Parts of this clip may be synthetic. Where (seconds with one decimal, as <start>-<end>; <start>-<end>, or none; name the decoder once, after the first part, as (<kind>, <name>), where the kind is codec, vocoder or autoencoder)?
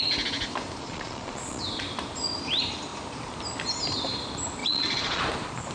0.8-1.6 (vocoder, Vocos); 4.6-5.2